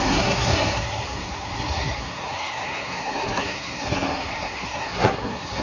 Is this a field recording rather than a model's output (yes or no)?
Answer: no